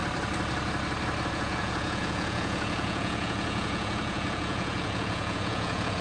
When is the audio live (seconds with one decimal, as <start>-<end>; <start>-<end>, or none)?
0.0-1.3